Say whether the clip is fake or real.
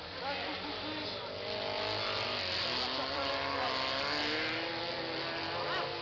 real